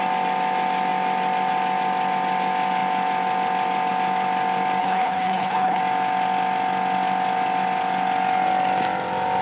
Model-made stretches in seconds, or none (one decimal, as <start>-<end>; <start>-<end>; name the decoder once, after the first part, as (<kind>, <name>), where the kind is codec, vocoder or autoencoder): 4.8-5.8 (codec, HILCodec)